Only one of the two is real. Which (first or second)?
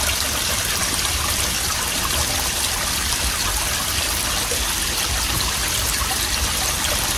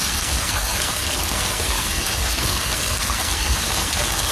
first